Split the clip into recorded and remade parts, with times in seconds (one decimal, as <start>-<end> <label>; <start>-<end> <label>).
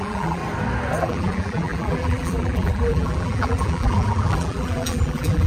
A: 0.0-0.4 remade; 0.4-1.0 recorded; 1.0-5.5 remade